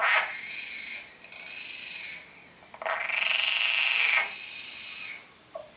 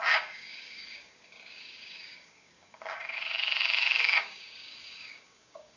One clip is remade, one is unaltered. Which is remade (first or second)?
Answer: second